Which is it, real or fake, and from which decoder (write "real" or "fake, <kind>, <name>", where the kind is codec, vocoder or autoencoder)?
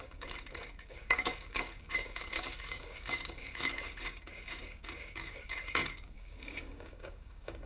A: fake, codec, DAC